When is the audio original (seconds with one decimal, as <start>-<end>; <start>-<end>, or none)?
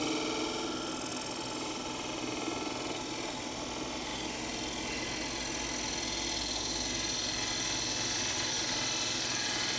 0.0-9.8